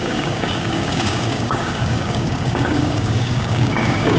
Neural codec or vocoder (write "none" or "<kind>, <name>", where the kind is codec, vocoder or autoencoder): codec, DAC